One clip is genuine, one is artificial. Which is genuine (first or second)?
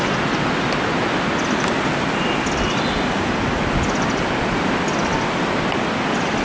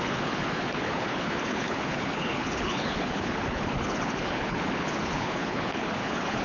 first